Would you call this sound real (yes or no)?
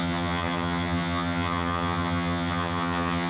no